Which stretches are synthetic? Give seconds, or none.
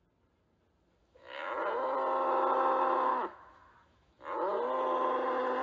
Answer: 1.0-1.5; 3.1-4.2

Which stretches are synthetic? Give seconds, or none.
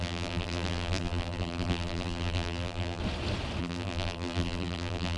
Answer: 0.0-3.0; 3.6-5.2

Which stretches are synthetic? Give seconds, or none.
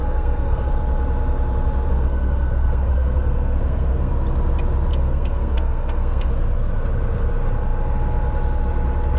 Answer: 0.0-0.7; 1.9-4.1; 4.9-6.3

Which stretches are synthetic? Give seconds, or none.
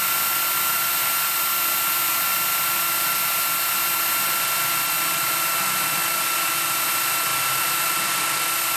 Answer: none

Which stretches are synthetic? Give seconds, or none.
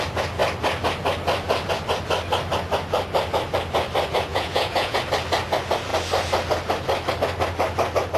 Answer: 4.3-5.0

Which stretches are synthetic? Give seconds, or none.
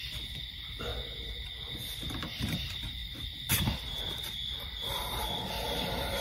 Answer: 0.0-0.9; 1.7-6.2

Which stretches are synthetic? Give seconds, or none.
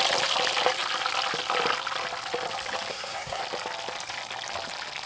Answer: 2.9-3.4